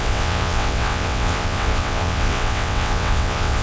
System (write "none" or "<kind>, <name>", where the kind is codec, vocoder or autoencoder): vocoder, WaveNeXt